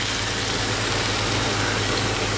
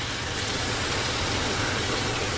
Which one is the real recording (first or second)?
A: first